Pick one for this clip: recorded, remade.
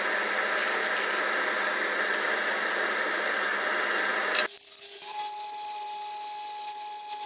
recorded